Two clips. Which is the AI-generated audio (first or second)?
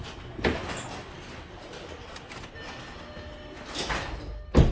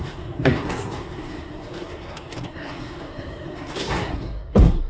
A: second